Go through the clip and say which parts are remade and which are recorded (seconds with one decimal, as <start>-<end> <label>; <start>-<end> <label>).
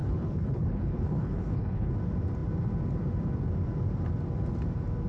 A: 0.0-1.9 remade; 1.9-5.1 recorded